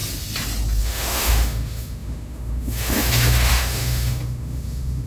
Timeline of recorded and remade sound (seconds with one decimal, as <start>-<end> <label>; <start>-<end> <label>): 0.0-0.8 recorded; 0.8-5.1 remade